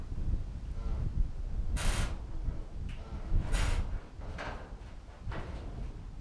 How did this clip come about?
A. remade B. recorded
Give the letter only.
B